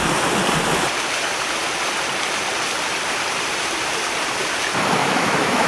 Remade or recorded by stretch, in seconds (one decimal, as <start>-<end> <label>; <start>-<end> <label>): 0.0-5.0 recorded; 5.0-5.7 remade